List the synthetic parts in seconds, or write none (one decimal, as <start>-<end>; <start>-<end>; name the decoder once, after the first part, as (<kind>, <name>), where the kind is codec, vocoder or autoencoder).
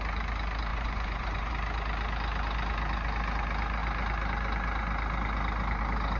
0.7-1.5 (vocoder, Vocos)